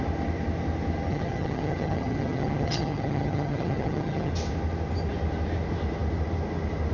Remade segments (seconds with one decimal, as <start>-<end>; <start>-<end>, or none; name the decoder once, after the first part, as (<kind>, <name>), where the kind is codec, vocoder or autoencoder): 1.1-4.3 (vocoder, HiFi-GAN)